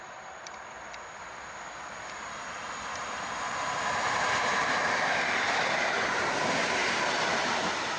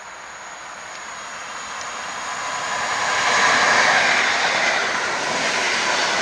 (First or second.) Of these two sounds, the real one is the second